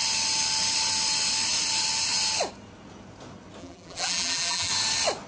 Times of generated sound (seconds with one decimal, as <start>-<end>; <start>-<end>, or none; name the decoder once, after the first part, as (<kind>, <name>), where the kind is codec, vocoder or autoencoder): 3.6-4.7 (vocoder, BigVGAN v2)